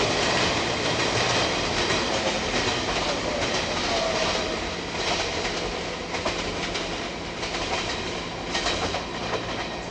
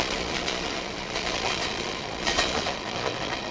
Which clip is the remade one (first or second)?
second